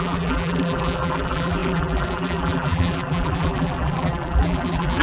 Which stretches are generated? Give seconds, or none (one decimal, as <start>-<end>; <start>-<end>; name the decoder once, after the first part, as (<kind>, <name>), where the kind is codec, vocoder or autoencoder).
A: 0.0-5.0 (vocoder, BigVGAN v2)